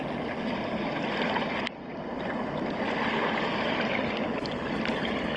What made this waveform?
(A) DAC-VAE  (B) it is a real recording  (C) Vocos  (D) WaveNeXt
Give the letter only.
B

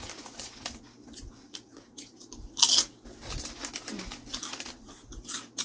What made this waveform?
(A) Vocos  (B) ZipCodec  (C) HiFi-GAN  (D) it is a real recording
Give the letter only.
D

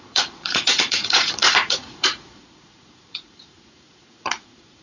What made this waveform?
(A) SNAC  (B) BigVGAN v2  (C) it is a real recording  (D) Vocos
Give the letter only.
D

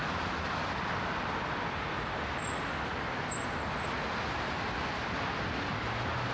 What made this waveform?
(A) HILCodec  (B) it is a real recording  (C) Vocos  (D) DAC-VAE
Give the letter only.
B